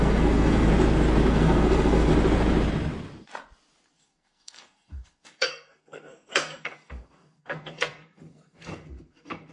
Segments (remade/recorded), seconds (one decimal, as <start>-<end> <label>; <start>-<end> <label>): 0.0-0.7 remade; 0.7-1.3 recorded; 1.3-2.1 remade; 2.1-4.0 recorded; 4.0-9.5 remade